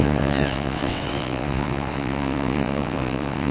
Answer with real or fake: fake